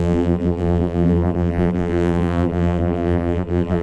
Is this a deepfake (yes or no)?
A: yes